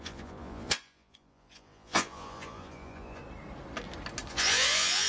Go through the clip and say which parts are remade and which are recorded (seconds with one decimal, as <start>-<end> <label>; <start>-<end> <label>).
0.0-3.2 remade; 3.2-4.3 recorded; 4.3-5.1 remade